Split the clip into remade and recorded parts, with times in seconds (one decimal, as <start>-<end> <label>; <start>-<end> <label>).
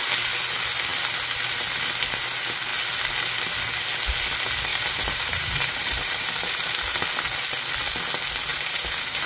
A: 0.0-4.7 recorded; 4.7-7.0 remade; 7.0-8.5 recorded; 8.5-9.3 remade